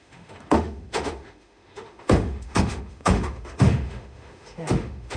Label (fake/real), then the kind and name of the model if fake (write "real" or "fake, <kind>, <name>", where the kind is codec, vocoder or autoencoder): fake, autoencoder, DAC-VAE